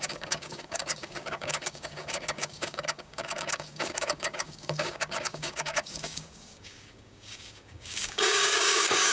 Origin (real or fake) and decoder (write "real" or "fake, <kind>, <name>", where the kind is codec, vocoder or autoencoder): fake, codec, DAC